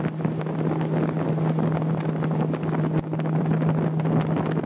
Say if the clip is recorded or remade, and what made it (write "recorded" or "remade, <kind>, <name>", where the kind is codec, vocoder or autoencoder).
recorded